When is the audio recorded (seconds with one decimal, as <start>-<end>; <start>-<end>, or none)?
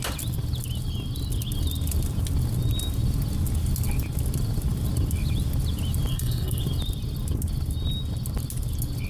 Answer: 0.0-6.1; 6.6-9.1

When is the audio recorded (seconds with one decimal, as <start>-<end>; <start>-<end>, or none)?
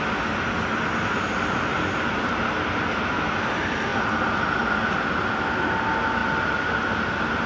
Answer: 0.0-7.5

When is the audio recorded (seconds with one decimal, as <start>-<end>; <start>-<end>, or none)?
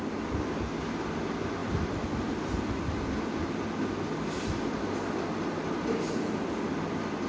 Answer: 0.0-7.3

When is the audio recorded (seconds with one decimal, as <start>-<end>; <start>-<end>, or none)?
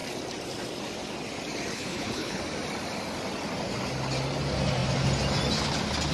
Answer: 0.0-1.7; 2.4-6.1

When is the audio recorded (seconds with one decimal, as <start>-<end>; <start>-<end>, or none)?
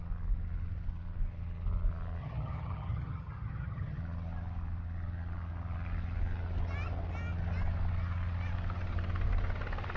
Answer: 0.0-2.2; 4.0-10.0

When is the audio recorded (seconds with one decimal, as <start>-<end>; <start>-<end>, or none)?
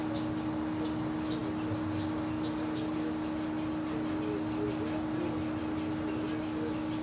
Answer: 0.0-7.0